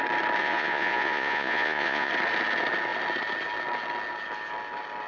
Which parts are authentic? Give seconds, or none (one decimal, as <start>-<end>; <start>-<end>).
0.0-0.4; 2.1-5.1